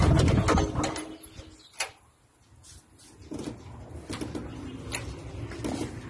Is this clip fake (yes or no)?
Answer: no